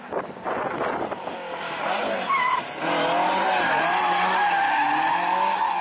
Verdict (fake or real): real